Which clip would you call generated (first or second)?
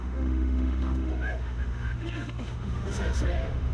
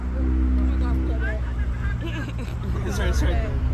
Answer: first